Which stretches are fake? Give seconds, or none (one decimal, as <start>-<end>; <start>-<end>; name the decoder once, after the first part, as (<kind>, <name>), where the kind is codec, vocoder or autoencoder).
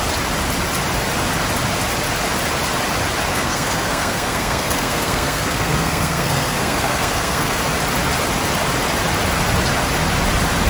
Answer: 3.3-7.6 (codec, SNAC)